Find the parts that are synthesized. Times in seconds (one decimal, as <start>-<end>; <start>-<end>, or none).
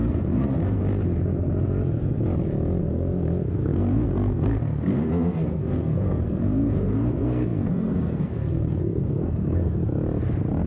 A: 0.0-0.8; 2.8-9.8